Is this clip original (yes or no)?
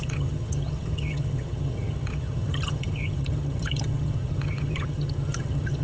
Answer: no